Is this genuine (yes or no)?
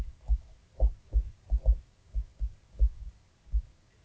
no